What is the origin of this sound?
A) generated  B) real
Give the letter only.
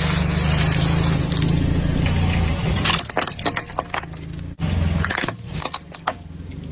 B